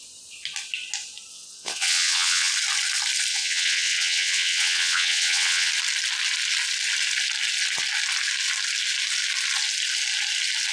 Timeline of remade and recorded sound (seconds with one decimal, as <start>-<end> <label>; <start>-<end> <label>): 0.0-1.3 recorded; 1.3-2.5 remade; 2.5-3.3 recorded; 3.3-5.7 remade; 5.7-10.7 recorded